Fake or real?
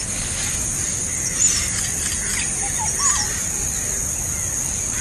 real